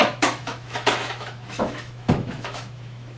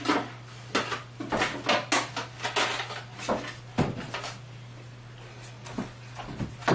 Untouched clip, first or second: second